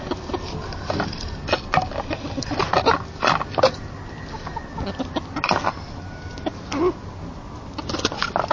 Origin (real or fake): real